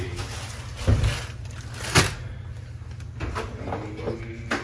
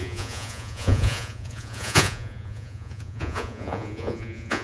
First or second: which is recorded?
first